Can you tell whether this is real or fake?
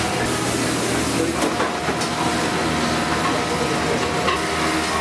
real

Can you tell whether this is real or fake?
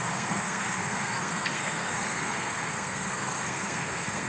fake